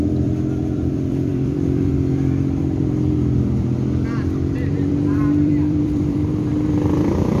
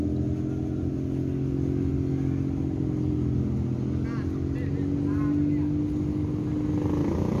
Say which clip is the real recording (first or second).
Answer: second